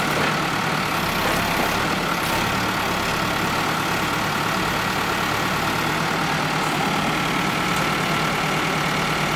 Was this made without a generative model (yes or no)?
yes